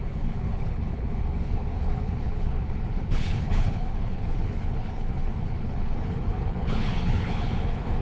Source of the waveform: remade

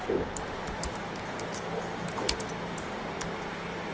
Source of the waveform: recorded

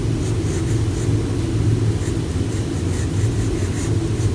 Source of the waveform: recorded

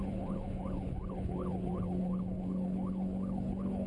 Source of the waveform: remade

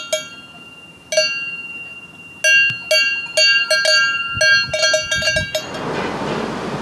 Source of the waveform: recorded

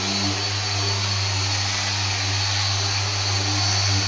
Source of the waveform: recorded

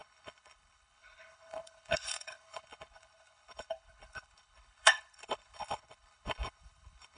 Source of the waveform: remade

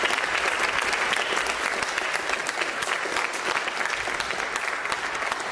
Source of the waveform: recorded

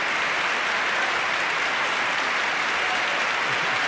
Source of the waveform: recorded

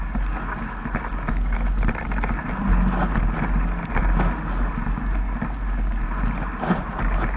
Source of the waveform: recorded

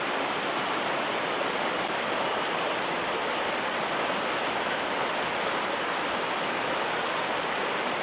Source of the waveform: recorded